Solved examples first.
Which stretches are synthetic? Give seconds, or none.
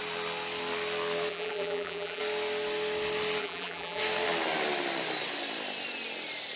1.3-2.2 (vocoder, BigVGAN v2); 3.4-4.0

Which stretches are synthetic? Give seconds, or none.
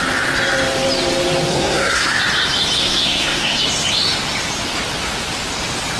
1.5-2.2 (codec, SNAC); 2.8-3.6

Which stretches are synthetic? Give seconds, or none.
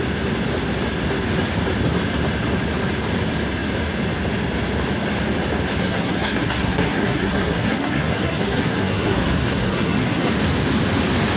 5.8-10.3 (codec, SNAC)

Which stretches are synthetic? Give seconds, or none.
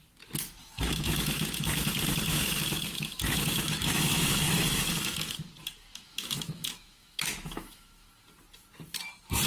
0.6-1.9 (autoencoder, DAC-VAE); 2.3-5.5; 5.9-8.1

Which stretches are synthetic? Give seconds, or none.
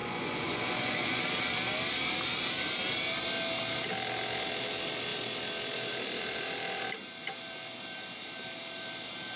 0.0-1.2 (vocoder, Vocos)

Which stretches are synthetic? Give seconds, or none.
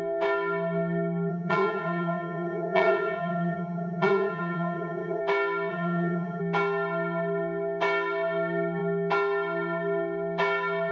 1.3-5.2 (vocoder, HiFi-GAN); 5.7-6.4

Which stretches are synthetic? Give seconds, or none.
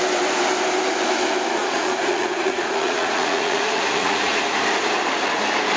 1.6-4.4 (vocoder, Vocos)